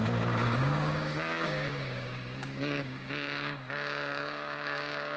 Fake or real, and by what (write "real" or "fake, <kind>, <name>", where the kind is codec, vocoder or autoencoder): fake, codec, DAC